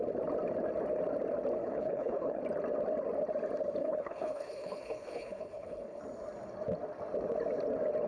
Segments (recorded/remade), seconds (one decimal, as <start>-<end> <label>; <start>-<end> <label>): 0.0-1.6 recorded; 1.6-2.4 remade; 2.4-3.8 recorded; 3.8-6.0 remade; 6.0-8.1 recorded